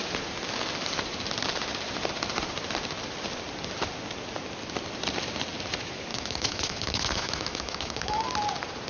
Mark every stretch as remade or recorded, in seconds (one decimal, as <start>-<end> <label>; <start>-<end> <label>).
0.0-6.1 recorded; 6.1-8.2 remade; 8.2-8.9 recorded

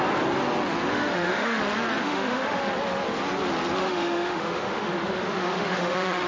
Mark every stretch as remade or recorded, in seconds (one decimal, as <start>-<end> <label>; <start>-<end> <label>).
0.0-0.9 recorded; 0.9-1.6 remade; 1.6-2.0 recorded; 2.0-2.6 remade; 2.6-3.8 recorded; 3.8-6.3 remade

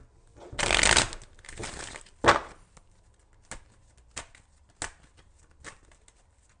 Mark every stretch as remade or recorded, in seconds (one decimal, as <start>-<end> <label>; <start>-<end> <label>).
0.0-6.6 recorded